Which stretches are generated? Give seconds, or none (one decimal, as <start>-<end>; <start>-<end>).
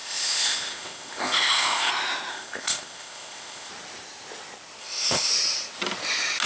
0.0-1.9; 2.3-3.7; 4.8-5.3